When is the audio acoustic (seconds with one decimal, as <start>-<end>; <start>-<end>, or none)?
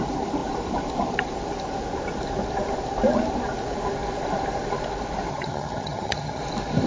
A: 0.0-5.3; 6.4-6.9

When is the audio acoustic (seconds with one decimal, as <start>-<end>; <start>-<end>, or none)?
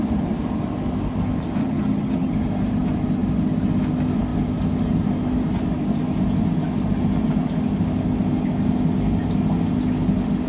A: 0.0-1.6; 2.3-10.5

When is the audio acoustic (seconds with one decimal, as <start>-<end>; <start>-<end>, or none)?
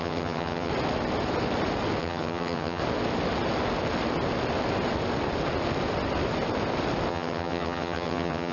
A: 0.7-2.0; 2.8-7.1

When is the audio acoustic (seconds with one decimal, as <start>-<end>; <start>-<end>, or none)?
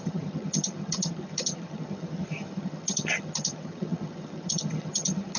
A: none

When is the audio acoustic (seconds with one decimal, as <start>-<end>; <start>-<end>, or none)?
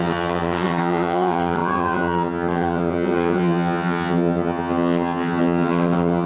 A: none